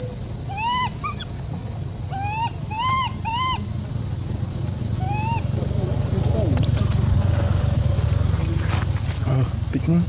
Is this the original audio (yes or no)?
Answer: yes